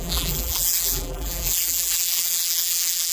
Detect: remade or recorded remade